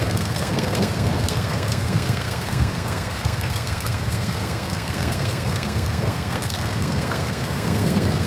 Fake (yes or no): yes